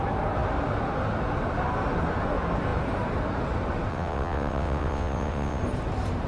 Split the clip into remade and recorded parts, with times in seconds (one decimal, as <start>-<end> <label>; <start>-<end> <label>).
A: 0.0-3.9 recorded; 3.9-5.6 remade; 5.6-6.3 recorded